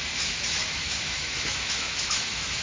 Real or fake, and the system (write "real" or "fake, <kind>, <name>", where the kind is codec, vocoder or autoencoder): fake, autoencoder, DAC-VAE